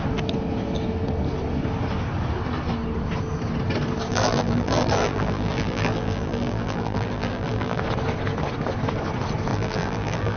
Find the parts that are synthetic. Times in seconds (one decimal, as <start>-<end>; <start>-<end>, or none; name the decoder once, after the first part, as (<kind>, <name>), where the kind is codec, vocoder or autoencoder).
4.1-7.8 (vocoder, BigVGAN v2); 9.5-10.4